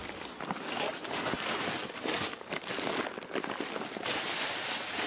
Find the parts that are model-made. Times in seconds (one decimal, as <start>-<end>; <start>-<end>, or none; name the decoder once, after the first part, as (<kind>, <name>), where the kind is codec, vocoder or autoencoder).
1.8-2.6 (vocoder, BigVGAN v2)